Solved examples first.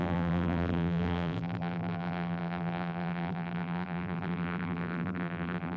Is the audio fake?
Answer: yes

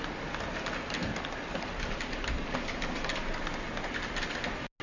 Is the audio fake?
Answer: no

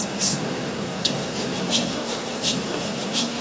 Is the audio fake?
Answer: yes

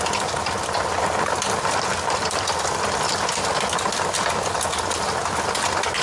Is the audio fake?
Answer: no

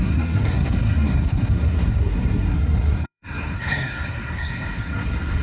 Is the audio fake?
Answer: yes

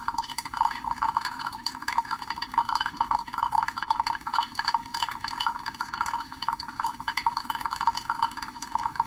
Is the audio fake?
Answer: yes